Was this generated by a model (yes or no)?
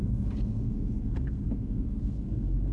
yes